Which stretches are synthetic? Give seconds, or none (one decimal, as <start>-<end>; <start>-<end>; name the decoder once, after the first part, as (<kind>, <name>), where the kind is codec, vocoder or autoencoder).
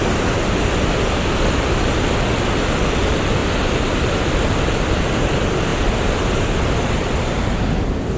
none